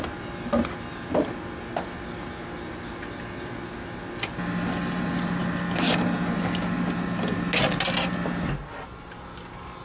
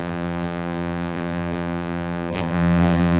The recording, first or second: first